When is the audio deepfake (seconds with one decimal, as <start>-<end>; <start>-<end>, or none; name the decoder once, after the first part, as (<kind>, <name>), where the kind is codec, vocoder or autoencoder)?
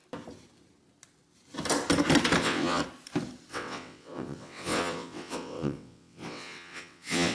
2.4-2.8 (vocoder, WaveNeXt); 3.5-7.3